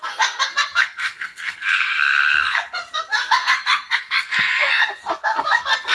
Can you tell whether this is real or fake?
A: fake